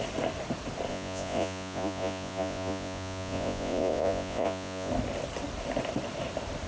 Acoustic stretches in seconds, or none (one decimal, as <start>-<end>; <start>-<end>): 0.0-0.9; 4.9-6.7